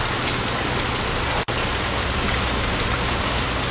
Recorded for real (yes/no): yes